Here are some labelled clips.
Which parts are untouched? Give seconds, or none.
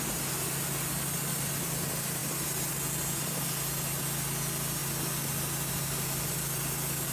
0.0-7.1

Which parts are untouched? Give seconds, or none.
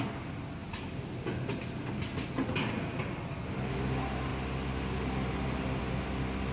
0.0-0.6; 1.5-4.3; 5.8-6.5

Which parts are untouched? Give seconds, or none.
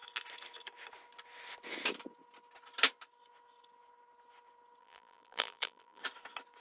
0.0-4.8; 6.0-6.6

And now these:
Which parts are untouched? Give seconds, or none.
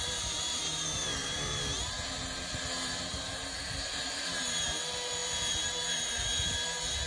none